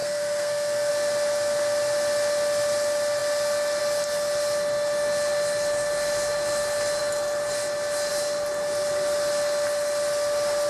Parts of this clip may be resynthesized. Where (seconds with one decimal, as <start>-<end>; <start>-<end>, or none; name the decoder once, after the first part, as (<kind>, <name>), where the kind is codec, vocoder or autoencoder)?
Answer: 0.0-0.9 (codec, SNAC)